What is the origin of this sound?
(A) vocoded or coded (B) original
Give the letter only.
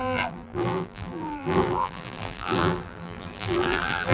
A